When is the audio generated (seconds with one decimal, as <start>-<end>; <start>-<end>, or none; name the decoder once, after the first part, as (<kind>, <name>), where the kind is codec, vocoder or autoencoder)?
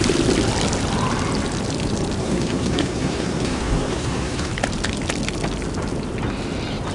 2.2-4.5 (codec, SNAC)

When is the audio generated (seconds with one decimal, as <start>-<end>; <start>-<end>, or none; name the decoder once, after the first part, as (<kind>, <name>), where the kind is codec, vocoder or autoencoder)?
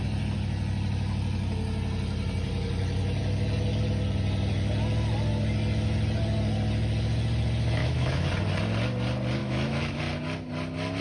7.8-8.3 (autoencoder, DAC-VAE); 9.4-10.0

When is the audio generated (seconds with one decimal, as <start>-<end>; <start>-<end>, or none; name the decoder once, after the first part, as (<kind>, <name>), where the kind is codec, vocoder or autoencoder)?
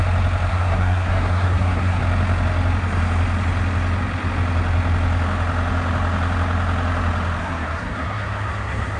0.5-2.0 (codec, SNAC); 7.4-9.0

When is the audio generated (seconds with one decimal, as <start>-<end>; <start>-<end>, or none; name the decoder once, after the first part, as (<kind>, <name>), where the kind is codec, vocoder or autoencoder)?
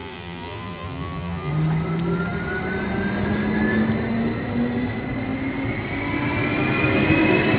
0.0-1.5 (vocoder, BigVGAN v2)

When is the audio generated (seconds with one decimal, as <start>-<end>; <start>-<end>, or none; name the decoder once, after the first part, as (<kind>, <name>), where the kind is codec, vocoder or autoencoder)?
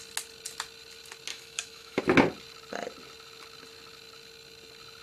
1.3-2.0 (autoencoder, DAC-VAE)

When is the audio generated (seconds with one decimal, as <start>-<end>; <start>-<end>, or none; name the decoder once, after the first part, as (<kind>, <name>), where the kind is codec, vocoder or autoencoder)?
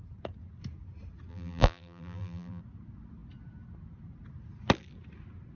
1.3-2.6 (vocoder, BigVGAN v2)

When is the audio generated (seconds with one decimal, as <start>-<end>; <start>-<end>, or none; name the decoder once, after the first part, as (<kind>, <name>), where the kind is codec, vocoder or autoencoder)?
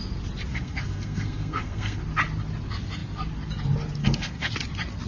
0.5-2.0 (codec, SNAC); 4.0-4.5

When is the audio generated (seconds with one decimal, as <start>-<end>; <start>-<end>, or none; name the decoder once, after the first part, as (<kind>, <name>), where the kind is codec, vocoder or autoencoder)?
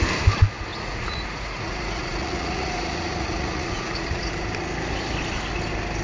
0.7-4.3 (vocoder, Vocos)